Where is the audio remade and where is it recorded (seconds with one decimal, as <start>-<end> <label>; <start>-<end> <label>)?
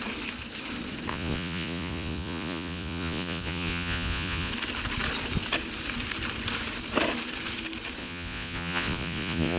0.0-1.1 recorded; 1.1-4.5 remade; 4.5-8.0 recorded; 8.0-9.6 remade